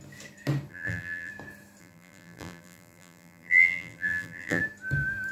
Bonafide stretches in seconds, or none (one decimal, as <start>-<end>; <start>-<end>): 0.0-0.7; 1.3-1.8; 4.6-5.3